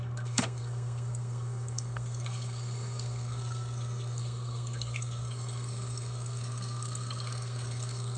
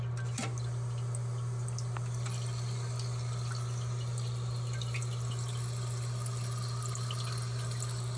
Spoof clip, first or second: first